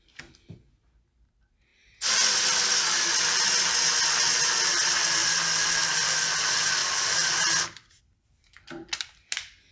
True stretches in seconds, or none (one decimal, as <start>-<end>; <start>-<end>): 0.0-9.7